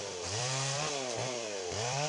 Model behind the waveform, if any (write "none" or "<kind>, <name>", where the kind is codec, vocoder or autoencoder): vocoder, BigVGAN v2